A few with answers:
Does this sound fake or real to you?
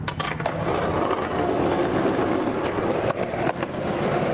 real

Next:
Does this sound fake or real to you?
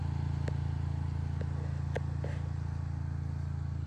real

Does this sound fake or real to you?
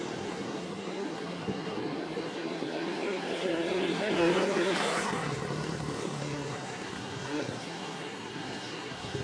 fake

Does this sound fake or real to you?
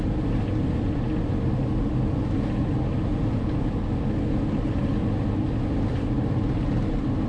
real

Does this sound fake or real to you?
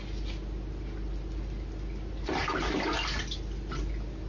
real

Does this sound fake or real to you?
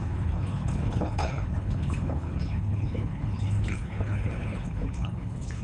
fake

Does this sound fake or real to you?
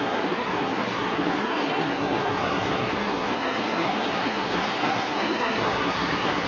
fake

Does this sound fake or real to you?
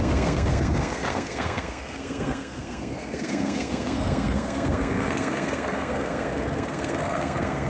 fake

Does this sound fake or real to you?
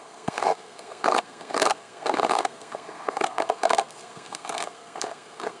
fake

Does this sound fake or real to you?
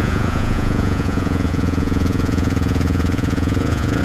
fake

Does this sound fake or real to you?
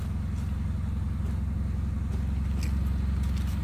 real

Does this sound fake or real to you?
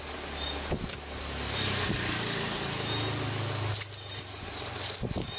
real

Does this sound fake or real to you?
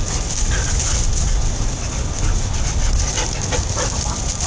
real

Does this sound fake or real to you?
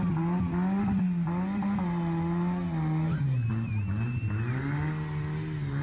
real